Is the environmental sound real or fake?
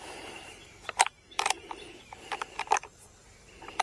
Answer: fake